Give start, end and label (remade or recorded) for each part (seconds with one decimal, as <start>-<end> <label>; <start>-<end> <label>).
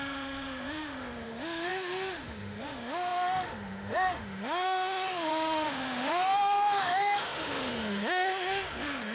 0.0-9.1 remade